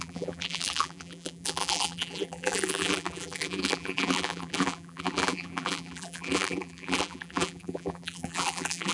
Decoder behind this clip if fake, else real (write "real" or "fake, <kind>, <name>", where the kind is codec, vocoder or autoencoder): fake, vocoder, BigVGAN v2